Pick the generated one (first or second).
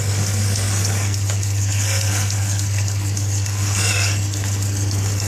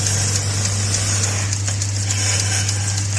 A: first